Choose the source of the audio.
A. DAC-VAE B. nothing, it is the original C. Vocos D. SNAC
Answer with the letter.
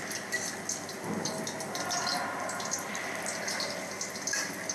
B